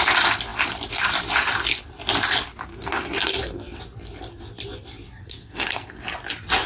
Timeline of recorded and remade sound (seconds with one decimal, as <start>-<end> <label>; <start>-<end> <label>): 0.0-2.7 recorded; 2.7-3.8 remade; 3.8-5.2 recorded; 5.2-6.0 remade; 6.0-6.7 recorded